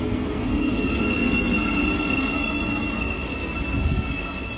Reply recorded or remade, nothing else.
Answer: remade